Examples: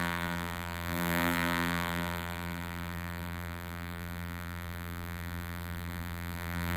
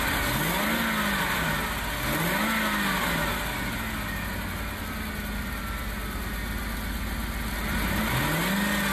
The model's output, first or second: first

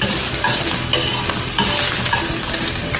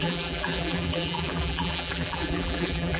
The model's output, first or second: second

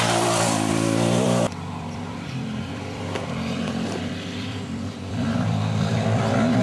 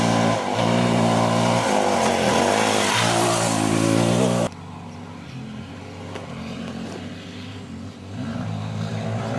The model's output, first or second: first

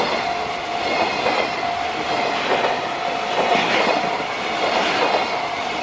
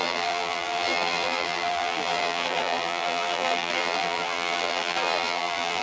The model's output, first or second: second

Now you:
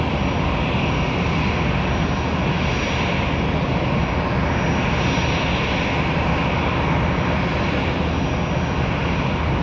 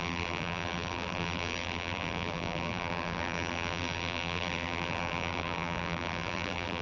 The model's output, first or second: second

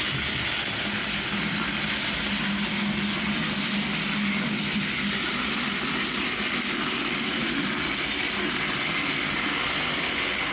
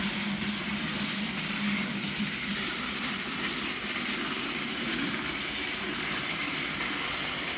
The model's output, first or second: second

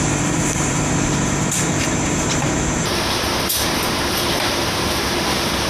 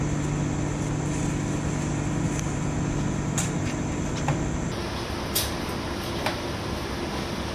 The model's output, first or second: first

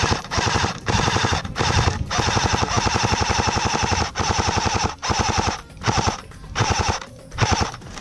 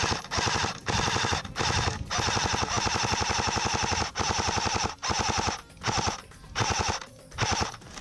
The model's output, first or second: first